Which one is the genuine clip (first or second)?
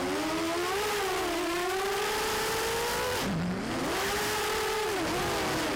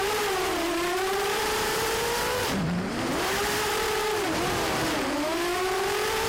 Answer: first